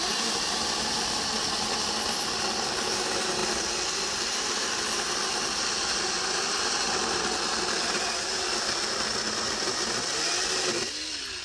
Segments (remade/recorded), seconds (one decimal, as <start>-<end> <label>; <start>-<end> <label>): 0.0-11.4 recorded